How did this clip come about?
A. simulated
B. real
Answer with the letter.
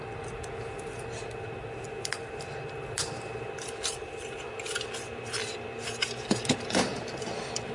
B